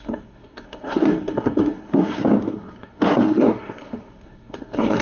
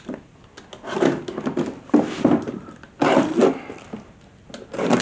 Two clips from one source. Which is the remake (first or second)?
first